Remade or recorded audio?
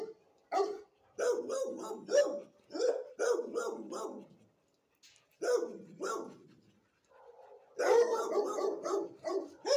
recorded